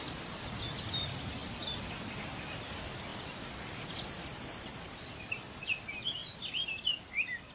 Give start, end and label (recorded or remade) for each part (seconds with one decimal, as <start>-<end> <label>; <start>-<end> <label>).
0.0-3.1 recorded; 3.1-3.6 remade; 3.6-4.7 recorded; 4.7-5.8 remade; 5.8-6.2 recorded; 6.2-6.8 remade; 6.8-7.5 recorded

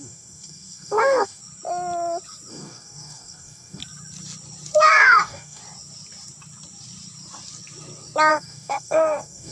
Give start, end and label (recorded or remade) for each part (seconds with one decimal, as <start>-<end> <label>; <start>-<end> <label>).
0.0-1.4 remade; 1.4-2.5 recorded; 2.5-3.8 remade; 3.8-4.8 recorded; 4.8-5.6 remade; 5.6-8.3 recorded; 8.3-9.5 remade

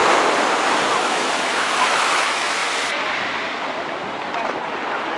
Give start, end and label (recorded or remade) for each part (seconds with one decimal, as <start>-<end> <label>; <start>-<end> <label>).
0.0-1.0 recorded; 1.0-2.6 remade; 2.6-5.2 recorded

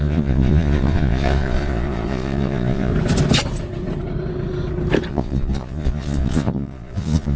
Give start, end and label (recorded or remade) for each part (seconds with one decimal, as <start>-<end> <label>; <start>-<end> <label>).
0.0-2.9 remade; 2.9-5.1 recorded; 5.1-7.4 remade

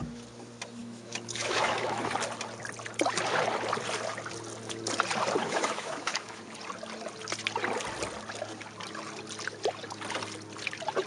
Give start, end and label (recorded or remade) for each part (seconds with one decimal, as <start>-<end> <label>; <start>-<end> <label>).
0.0-0.8 recorded; 0.8-2.1 remade; 2.1-5.4 recorded; 5.4-6.4 remade; 6.4-11.1 recorded

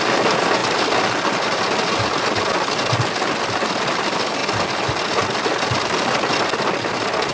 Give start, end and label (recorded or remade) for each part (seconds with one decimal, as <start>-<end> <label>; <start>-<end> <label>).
0.0-7.3 recorded